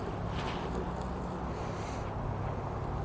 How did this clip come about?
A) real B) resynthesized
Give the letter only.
A